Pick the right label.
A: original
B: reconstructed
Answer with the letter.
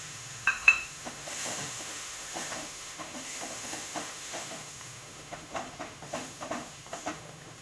B